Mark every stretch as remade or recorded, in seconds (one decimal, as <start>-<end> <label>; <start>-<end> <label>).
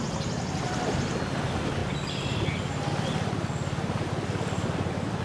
0.0-5.2 recorded